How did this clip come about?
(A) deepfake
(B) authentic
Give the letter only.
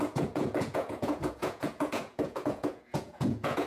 A